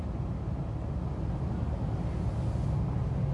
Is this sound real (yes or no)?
yes